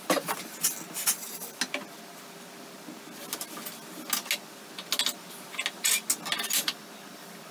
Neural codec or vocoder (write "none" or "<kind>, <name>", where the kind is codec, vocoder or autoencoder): none